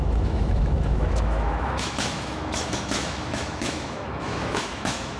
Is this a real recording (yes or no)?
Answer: no